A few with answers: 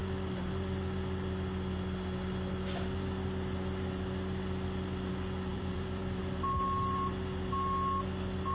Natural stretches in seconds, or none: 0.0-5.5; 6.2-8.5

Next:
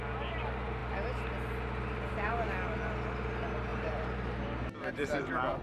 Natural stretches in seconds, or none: 0.0-3.7

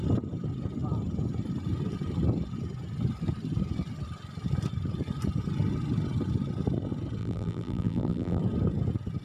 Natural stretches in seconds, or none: 0.0-7.2; 8.4-9.2

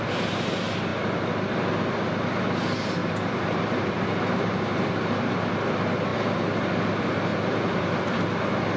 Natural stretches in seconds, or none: 0.0-3.0; 5.5-6.1; 6.7-7.3; 8.0-8.8

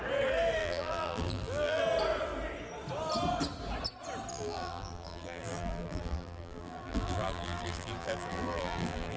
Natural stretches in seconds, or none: 0.0-0.6; 1.8-4.3

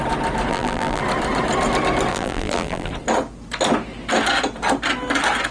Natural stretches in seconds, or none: 0.0-0.5; 1.0-2.1; 2.9-5.5

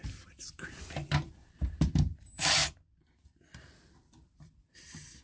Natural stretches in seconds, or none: 2.6-3.6

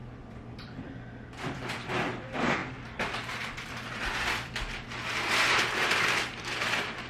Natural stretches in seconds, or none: none